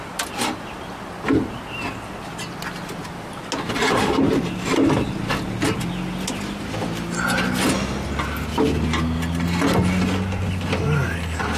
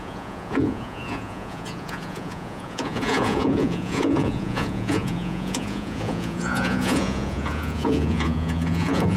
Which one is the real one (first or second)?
first